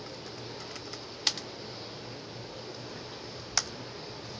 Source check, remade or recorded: recorded